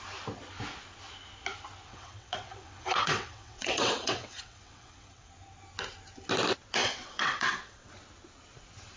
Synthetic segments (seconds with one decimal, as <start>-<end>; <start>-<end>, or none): 1.9-5.3; 6.8-7.9